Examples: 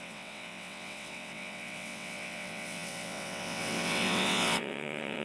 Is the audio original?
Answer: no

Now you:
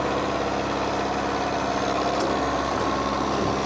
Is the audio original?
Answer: yes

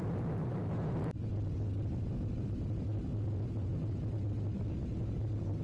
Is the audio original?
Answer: yes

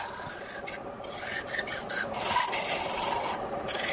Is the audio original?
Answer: yes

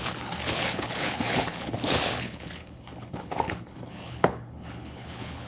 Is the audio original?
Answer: no